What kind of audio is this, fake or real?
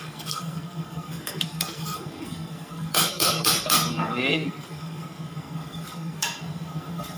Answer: fake